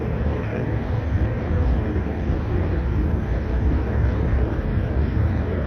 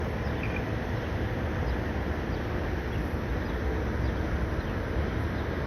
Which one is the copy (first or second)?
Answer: first